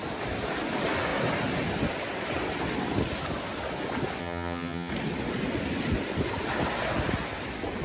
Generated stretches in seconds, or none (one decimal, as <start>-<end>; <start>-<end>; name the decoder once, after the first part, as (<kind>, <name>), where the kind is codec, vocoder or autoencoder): 4.2-4.9 (vocoder, HiFi-GAN)